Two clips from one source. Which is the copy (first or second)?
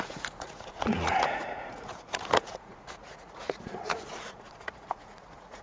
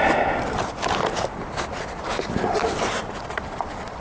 first